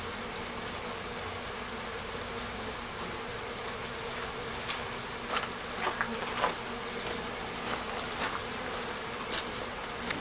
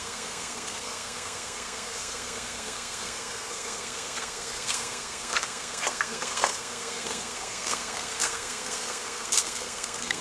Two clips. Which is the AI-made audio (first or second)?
second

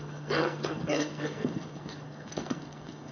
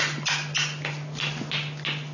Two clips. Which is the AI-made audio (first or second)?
first